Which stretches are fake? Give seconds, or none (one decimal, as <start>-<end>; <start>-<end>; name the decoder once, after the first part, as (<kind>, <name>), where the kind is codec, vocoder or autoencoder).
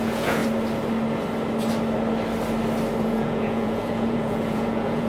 0.0-0.4 (vocoder, Vocos); 3.0-5.1